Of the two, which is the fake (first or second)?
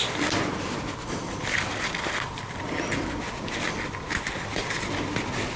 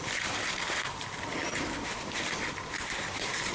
second